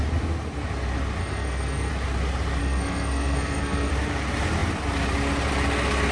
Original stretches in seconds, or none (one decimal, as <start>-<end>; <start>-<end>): 0.0-1.2; 1.9-2.6; 3.9-6.1